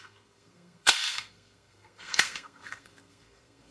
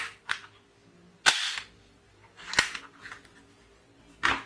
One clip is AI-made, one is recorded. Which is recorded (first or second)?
second